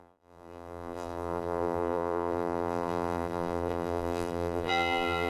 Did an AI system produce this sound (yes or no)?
yes